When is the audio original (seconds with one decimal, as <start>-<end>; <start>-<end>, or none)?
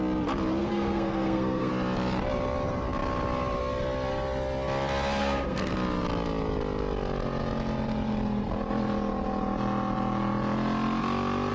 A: 0.0-0.6; 1.7-5.2; 5.7-11.5